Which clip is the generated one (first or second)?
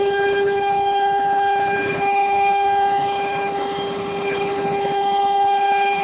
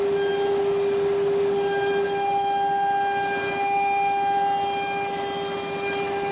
first